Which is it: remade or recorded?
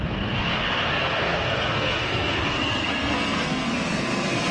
remade